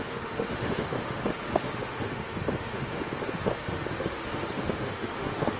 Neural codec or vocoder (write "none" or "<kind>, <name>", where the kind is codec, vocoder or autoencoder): autoencoder, DAC-VAE